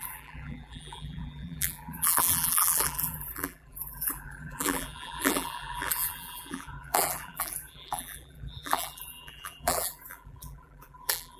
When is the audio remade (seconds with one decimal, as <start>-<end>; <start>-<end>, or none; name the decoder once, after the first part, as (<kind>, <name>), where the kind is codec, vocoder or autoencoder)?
0.0-11.4 (vocoder, BigVGAN v2)

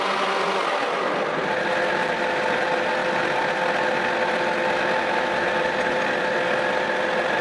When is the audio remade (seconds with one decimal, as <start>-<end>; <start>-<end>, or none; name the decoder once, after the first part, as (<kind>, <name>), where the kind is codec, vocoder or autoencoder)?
none

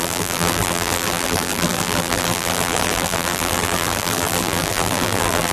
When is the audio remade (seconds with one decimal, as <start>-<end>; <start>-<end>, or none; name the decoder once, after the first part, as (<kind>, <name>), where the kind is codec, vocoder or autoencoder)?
0.0-5.5 (vocoder, BigVGAN v2)

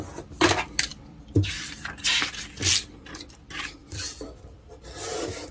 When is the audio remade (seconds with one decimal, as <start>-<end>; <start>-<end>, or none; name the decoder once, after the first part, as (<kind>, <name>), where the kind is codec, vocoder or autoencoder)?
0.9-2.7 (vocoder, BigVGAN v2); 3.8-4.3

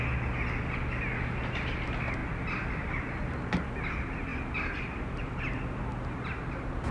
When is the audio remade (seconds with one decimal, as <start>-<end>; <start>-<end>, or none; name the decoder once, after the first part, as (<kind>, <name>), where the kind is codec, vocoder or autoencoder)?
none

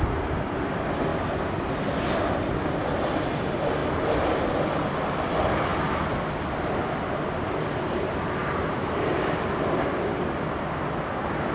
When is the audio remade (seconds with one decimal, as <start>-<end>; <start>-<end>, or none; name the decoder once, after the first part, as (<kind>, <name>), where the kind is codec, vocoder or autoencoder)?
3.8-4.5 (vocoder, BigVGAN v2); 8.4-10.5

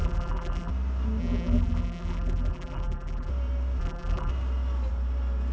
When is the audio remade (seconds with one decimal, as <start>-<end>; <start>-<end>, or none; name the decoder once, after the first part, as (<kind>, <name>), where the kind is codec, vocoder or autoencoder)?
0.0-0.7 (vocoder, BigVGAN v2); 1.2-3.3; 3.8-4.3

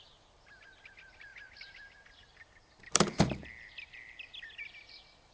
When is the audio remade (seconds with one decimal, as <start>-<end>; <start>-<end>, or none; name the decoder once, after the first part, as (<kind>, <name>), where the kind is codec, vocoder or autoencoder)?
0.0-1.3 (vocoder, BigVGAN v2); 2.1-5.3